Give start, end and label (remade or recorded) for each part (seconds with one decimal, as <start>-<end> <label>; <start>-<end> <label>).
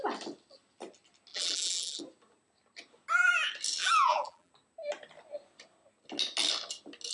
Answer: 0.0-1.3 recorded; 1.3-2.0 remade; 2.0-3.8 recorded; 3.8-4.5 remade; 4.5-7.1 recorded